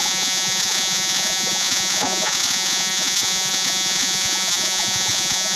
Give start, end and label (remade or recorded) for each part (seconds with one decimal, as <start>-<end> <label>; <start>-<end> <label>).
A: 0.0-5.6 remade